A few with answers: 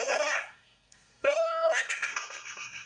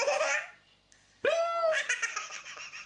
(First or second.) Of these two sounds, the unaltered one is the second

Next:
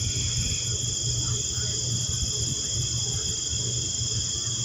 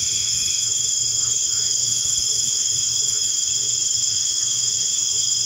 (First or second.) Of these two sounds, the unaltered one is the first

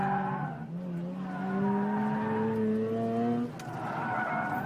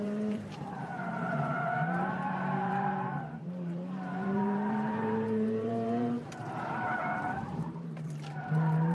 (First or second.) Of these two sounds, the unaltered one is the first